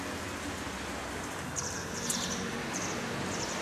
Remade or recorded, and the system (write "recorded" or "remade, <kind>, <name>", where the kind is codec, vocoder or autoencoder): recorded